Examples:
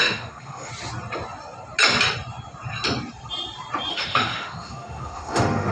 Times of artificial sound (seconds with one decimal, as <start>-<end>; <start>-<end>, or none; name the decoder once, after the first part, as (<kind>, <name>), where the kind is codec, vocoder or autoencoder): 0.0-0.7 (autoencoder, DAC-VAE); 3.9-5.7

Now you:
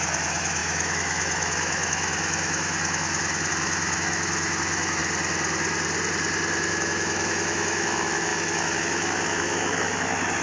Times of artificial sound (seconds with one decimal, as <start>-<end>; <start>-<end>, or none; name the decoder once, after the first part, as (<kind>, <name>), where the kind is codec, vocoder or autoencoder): 0.0-5.0 (autoencoder, DAC-VAE); 6.7-10.4

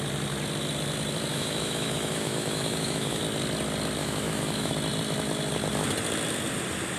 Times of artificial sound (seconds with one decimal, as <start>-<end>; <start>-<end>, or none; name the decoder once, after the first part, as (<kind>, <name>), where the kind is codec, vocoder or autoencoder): 1.3-3.2 (autoencoder, DAC-VAE); 4.0-4.7

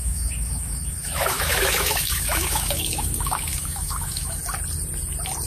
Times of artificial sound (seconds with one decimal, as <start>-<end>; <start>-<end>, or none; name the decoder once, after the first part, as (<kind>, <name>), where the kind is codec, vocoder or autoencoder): 0.0-4.4 (autoencoder, DAC-VAE)

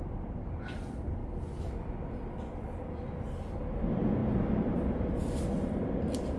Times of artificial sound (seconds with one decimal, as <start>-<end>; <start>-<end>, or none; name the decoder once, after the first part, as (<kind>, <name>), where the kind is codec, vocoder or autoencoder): none